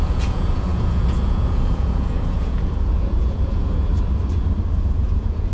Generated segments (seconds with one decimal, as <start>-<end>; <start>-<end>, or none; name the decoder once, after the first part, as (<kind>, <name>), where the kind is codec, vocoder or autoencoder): 0.0-3.9 (vocoder, Vocos); 4.8-5.5